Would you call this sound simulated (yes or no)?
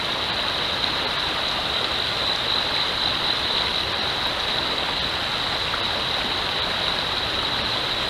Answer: no